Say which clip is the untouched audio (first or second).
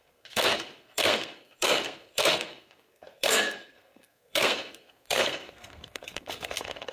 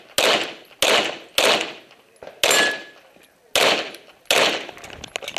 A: second